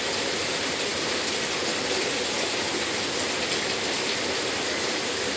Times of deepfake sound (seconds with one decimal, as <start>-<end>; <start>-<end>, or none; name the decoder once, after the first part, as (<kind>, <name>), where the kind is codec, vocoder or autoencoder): none